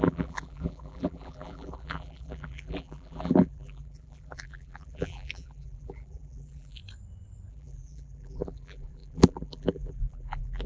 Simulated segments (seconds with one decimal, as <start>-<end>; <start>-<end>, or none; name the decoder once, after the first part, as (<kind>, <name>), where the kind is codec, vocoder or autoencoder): 0.0-6.8 (vocoder, BigVGAN v2); 7.5-10.7